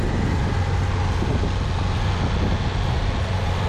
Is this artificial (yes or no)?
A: no